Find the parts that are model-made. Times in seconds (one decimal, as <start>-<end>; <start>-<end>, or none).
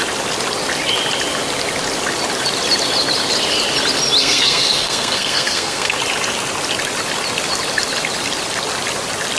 4.2-6.0